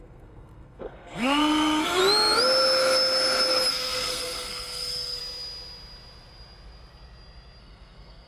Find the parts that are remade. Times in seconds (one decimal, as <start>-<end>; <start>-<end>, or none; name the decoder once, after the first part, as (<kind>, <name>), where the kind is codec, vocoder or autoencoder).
0.0-2.0 (codec, SNAC); 3.7-5.2; 7.6-8.3